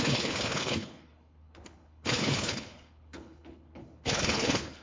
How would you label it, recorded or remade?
remade